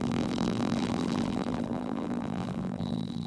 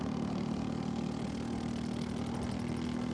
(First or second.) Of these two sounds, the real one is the second